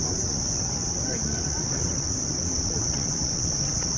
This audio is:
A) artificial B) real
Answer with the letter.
A